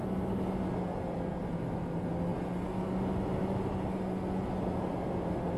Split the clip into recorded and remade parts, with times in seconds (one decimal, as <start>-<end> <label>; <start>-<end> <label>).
0.0-5.6 recorded